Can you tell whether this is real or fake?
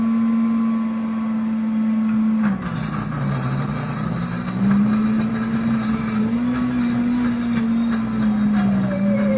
real